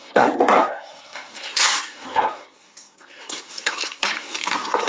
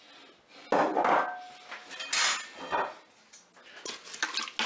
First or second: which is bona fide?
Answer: second